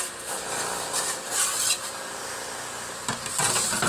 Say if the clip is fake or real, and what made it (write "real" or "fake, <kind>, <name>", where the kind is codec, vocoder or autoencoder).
real